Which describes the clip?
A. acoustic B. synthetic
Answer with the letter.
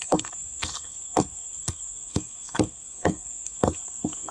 B